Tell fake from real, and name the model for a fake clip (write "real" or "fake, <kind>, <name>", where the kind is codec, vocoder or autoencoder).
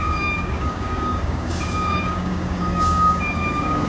fake, codec, DAC